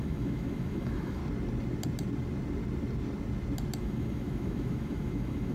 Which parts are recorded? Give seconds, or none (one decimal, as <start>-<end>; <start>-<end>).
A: 1.2-3.8